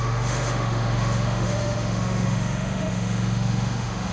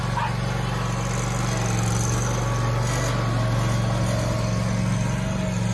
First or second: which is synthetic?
first